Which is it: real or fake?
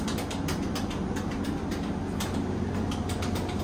real